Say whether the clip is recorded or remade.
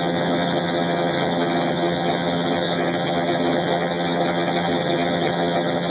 remade